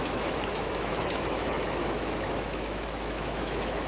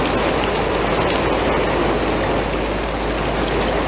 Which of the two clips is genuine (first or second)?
second